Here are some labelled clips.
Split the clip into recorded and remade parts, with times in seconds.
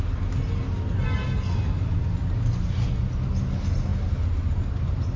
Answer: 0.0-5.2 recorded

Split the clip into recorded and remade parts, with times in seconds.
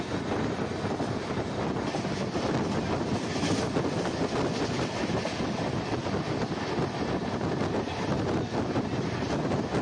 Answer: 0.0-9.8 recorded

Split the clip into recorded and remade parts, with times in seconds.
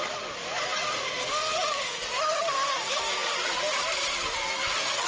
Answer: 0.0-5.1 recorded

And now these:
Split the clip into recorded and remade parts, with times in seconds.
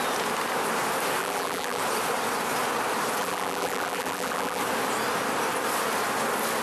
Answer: 0.0-1.2 recorded; 1.2-1.8 remade; 1.8-3.2 recorded; 3.2-4.6 remade; 4.6-6.6 recorded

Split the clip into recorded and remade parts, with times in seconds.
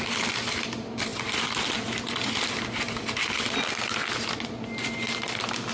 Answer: 0.0-5.7 recorded